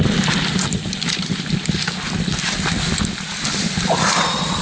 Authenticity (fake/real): real